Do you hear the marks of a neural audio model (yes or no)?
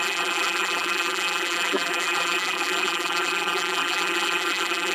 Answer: yes